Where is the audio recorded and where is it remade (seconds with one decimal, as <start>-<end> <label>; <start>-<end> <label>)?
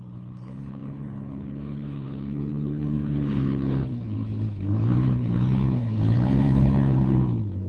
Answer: 0.0-7.7 remade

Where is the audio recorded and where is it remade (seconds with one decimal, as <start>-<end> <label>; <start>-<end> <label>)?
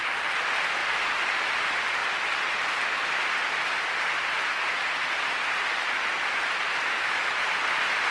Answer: 0.0-0.8 remade; 0.8-1.3 recorded; 1.3-8.1 remade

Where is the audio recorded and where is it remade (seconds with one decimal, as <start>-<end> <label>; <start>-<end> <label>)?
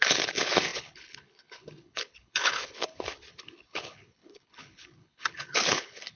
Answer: 0.0-6.2 remade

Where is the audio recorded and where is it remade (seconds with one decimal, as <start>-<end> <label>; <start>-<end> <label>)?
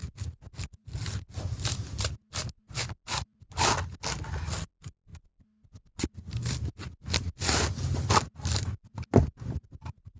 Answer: 0.0-10.2 recorded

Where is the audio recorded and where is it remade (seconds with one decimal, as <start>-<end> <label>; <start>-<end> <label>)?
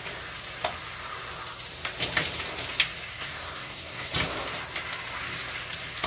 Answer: 0.0-3.1 recorded; 3.1-4.1 remade; 4.1-6.1 recorded